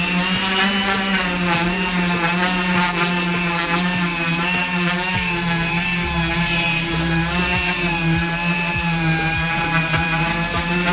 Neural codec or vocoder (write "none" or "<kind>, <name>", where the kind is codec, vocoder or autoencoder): none